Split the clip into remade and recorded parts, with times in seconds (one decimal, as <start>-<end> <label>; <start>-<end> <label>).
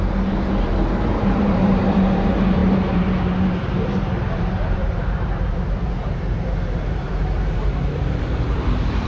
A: 0.0-9.1 remade